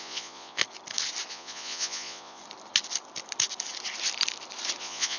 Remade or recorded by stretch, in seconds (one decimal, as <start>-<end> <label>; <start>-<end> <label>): 0.0-0.6 remade; 0.6-1.3 recorded; 1.3-2.4 remade; 2.4-4.8 recorded; 4.8-5.2 remade

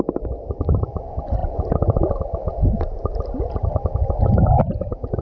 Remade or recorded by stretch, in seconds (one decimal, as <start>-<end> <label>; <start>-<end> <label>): 0.0-5.2 recorded

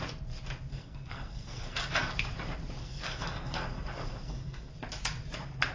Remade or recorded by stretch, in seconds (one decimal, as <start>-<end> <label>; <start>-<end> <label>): 0.0-0.7 recorded; 0.7-2.1 remade; 2.1-2.8 recorded; 2.8-4.7 remade; 4.7-5.7 recorded

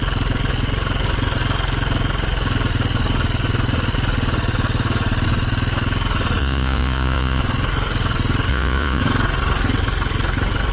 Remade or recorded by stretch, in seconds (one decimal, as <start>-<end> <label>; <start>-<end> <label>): 0.0-6.4 recorded; 6.4-7.4 remade; 7.4-8.5 recorded; 8.5-9.0 remade; 9.0-10.7 recorded

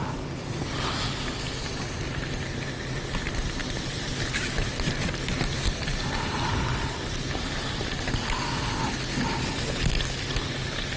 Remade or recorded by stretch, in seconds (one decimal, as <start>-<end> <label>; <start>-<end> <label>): 0.0-11.0 recorded